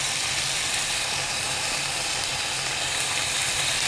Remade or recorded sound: recorded